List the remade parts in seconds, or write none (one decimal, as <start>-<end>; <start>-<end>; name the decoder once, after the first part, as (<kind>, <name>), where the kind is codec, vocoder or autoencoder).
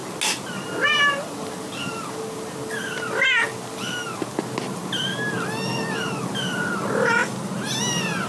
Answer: 7.2-7.8 (vocoder, BigVGAN v2)